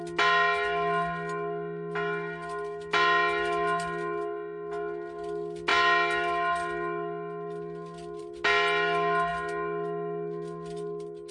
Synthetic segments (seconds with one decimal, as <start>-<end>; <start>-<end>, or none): none